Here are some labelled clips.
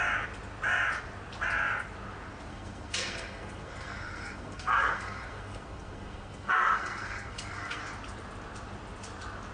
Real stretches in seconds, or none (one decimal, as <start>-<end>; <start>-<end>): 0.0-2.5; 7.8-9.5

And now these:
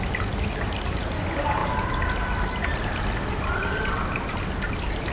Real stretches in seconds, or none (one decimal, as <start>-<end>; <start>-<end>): 0.0-5.1

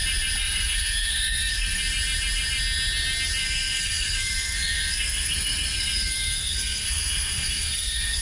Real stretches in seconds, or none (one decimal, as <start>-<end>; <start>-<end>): 0.0-0.4; 1.8-3.4

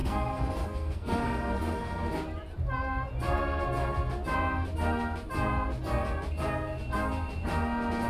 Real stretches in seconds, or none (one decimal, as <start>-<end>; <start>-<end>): 2.1-8.1

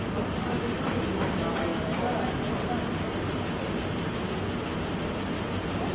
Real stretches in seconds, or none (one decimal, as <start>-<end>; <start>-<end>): 0.0-5.9

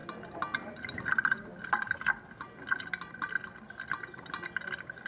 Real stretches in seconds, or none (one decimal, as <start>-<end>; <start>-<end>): 0.0-5.1